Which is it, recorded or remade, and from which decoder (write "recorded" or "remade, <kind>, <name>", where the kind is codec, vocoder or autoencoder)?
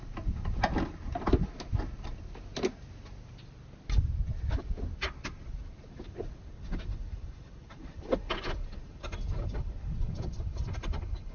recorded